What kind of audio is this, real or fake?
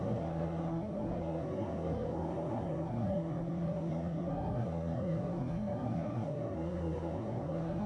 fake